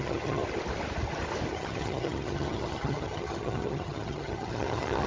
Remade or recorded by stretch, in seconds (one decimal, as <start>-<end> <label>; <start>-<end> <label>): 0.0-0.4 remade; 0.4-1.5 recorded; 1.5-5.1 remade

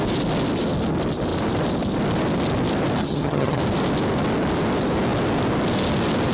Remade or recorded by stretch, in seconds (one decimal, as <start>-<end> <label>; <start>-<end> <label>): 0.0-3.0 recorded; 3.0-3.6 remade; 3.6-6.3 recorded

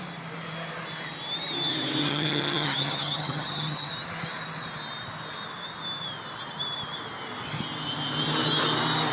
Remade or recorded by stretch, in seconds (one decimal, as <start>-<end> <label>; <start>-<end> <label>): 0.0-2.0 recorded; 2.0-3.9 remade; 3.9-9.1 recorded

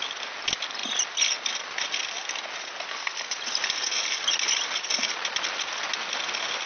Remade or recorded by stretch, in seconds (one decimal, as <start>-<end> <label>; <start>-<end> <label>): 0.0-6.7 recorded

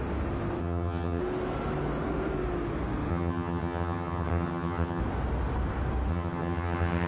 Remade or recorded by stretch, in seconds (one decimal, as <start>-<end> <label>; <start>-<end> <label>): 0.0-0.6 recorded; 0.6-1.2 remade; 1.2-3.1 recorded; 3.1-5.0 remade; 5.0-6.1 recorded; 6.1-7.1 remade

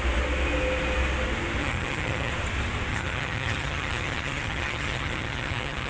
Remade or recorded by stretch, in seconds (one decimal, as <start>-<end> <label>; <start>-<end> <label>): 0.0-1.6 recorded; 1.6-2.3 remade; 2.3-2.9 recorded; 2.9-5.9 remade

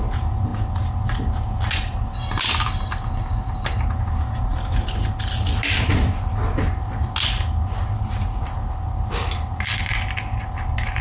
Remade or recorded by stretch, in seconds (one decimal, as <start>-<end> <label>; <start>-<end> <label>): 0.0-11.0 recorded

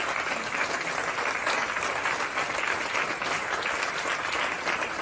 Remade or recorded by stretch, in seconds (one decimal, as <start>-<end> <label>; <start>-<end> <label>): 0.0-5.0 recorded